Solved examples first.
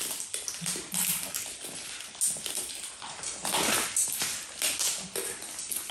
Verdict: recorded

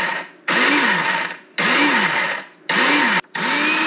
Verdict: recorded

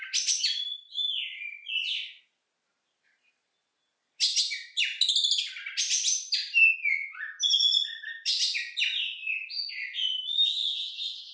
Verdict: recorded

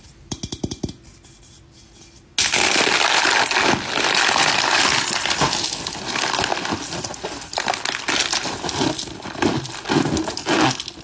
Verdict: recorded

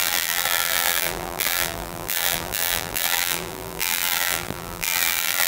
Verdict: remade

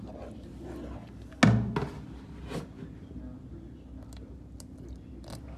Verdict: recorded